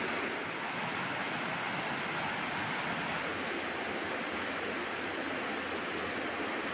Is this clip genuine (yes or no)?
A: yes